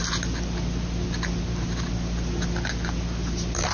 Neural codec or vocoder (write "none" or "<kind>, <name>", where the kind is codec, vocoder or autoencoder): none